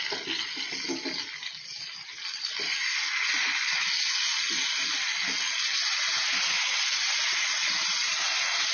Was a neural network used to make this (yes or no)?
no